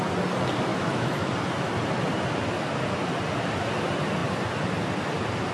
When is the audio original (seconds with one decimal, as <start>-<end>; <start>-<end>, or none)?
0.0-0.7; 1.3-5.5